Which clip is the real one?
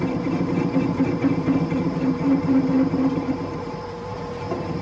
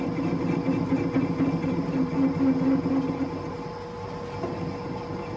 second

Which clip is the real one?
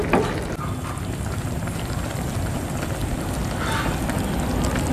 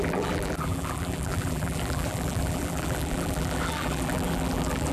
first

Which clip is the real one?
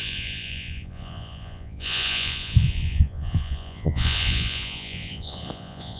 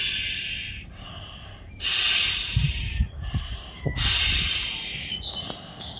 second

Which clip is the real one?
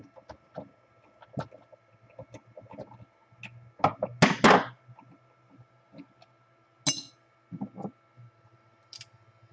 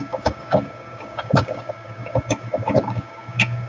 first